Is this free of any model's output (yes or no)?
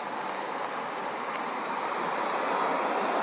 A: yes